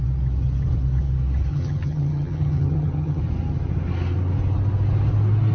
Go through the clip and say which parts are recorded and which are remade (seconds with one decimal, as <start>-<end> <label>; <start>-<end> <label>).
0.0-1.5 recorded; 1.5-3.2 remade; 3.2-5.5 recorded